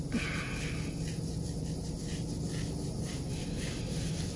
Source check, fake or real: real